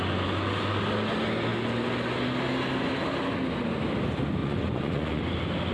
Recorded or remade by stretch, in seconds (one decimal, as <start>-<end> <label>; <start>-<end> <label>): 0.0-4.4 recorded; 4.4-5.2 remade; 5.2-5.7 recorded